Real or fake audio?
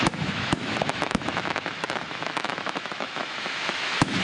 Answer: fake